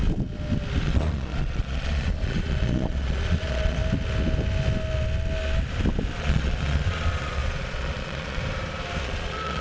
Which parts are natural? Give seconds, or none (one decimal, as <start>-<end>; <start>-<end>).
0.0-0.8; 3.8-6.2; 8.4-9.0